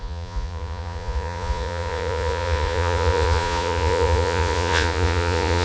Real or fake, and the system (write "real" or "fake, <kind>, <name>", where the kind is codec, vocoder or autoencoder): fake, vocoder, Vocos